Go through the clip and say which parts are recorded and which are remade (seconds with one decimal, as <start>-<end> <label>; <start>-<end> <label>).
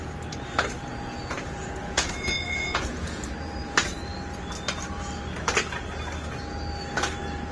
0.0-0.9 recorded; 0.9-3.3 remade; 3.3-7.5 recorded